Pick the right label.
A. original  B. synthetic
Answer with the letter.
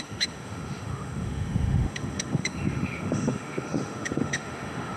B